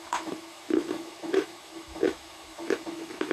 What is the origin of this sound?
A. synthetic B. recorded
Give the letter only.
A